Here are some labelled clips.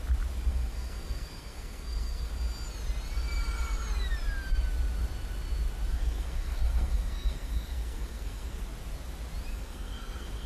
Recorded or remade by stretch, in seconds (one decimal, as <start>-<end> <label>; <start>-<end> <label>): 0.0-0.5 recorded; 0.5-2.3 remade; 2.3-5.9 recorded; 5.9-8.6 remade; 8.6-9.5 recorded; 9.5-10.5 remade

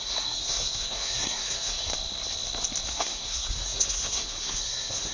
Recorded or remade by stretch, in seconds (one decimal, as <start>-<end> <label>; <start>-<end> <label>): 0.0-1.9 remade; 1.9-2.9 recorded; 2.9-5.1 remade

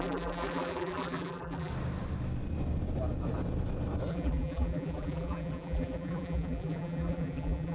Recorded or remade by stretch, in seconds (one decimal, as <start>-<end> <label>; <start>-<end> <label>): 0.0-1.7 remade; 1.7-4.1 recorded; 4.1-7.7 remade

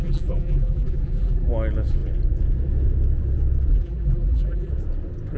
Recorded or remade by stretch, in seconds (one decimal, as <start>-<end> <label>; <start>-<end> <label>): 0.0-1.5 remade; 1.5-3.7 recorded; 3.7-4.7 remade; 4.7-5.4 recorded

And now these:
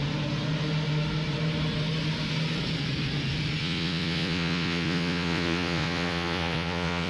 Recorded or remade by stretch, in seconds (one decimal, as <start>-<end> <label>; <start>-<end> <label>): 0.0-3.6 recorded; 3.6-7.1 remade

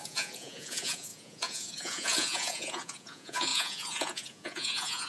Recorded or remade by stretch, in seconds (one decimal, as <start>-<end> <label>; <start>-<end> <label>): 0.0-5.1 remade

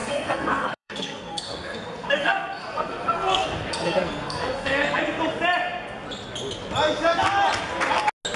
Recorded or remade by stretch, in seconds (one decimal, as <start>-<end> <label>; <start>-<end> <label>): 0.0-5.0 remade; 5.0-8.4 recorded